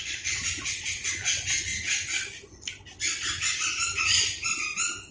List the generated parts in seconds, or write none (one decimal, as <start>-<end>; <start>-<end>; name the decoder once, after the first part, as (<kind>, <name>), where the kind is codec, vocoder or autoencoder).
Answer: none